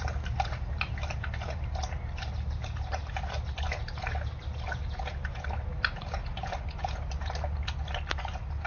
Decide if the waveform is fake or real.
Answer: real